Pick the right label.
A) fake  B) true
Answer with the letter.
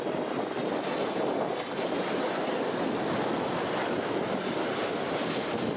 B